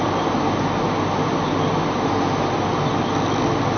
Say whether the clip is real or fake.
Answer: real